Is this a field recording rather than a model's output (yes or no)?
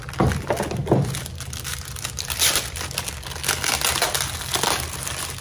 yes